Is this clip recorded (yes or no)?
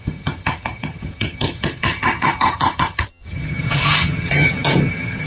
no